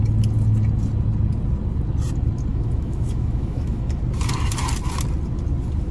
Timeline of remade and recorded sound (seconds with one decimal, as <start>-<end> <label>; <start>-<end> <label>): 0.0-2.5 recorded; 2.5-4.0 remade; 4.0-5.9 recorded